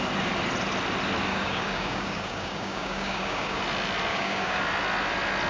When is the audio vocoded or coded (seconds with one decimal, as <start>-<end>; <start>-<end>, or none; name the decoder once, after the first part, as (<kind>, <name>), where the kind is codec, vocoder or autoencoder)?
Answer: 1.3-3.6 (codec, DAC); 4.1-4.6